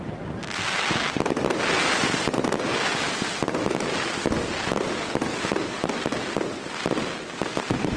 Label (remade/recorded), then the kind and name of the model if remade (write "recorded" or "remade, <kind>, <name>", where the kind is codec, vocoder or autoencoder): recorded